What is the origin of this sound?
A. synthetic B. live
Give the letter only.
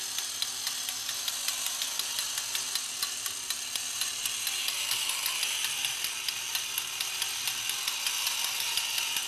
B